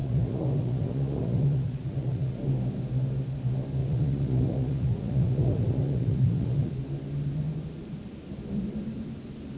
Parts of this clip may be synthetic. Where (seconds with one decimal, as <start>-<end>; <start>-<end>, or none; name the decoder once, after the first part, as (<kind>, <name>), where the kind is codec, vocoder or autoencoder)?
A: 0.0-2.4 (vocoder, Vocos); 3.8-6.7